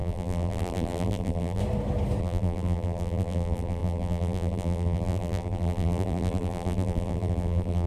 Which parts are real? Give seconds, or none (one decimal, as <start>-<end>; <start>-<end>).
1.6-2.2